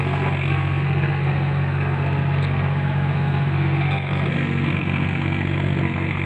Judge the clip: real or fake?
fake